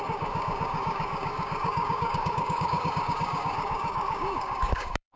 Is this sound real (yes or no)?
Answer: no